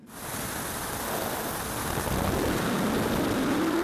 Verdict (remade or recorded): recorded